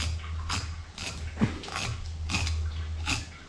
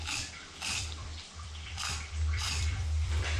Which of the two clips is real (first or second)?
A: first